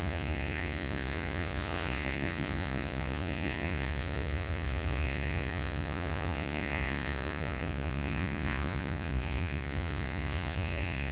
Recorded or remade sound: remade